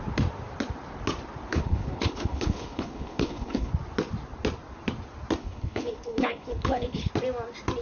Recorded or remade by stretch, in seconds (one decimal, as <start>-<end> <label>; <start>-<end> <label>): 0.0-1.5 recorded; 1.5-3.7 remade; 3.7-5.4 recorded; 5.4-7.1 remade; 7.1-7.8 recorded